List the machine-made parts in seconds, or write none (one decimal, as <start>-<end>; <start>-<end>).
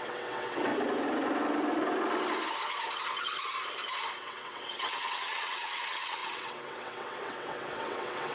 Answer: 0.0-0.7; 4.2-8.3